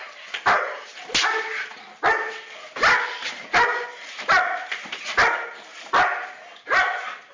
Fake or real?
real